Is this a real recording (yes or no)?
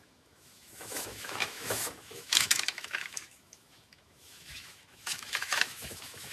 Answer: no